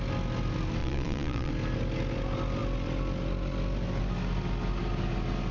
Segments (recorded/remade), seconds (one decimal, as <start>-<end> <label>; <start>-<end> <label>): 0.0-0.8 recorded; 0.8-1.5 remade; 1.5-5.5 recorded